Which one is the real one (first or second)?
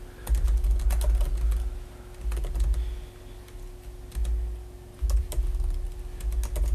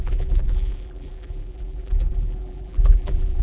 first